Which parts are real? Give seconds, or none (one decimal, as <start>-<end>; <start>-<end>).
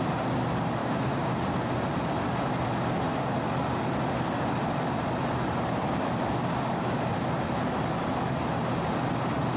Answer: 0.0-0.8; 1.3-9.6